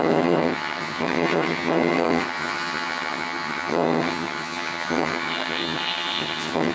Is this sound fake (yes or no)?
yes